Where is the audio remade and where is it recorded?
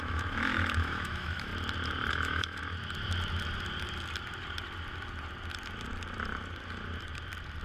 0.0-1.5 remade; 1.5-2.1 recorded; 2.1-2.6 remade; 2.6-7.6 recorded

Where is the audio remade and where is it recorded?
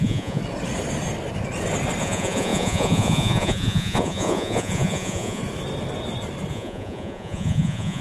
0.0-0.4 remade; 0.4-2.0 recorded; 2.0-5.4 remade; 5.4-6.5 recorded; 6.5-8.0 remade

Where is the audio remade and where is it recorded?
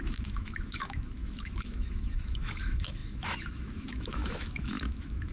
0.0-5.3 remade